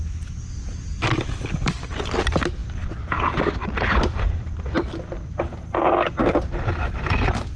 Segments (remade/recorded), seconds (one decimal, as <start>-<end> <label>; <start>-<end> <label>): 0.0-1.1 recorded; 1.1-1.9 remade; 1.9-7.6 recorded